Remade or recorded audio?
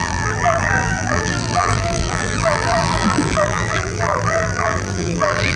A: remade